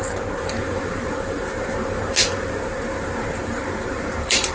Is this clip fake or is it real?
fake